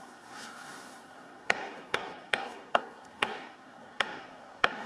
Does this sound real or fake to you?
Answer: fake